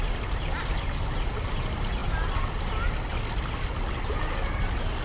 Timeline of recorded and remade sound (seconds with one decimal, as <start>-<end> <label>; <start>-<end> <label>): 0.0-5.0 recorded